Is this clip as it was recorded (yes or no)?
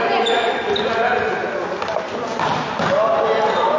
yes